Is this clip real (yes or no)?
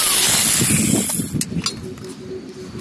yes